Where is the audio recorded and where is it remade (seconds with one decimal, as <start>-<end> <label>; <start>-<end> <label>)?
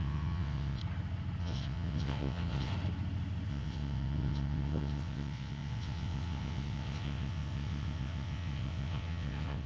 0.0-0.8 remade; 0.8-1.4 recorded; 1.4-2.7 remade; 2.7-3.5 recorded; 3.5-9.7 remade